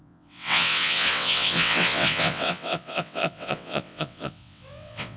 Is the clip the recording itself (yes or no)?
no